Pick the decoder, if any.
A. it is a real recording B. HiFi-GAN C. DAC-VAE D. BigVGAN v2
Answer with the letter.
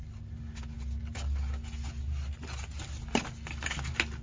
A